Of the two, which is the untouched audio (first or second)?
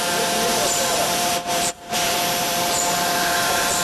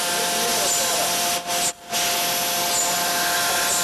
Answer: second